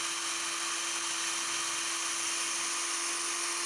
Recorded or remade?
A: recorded